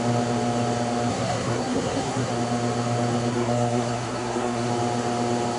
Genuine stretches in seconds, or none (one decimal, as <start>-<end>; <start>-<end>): 0.0-1.1; 2.3-3.3; 4.7-5.6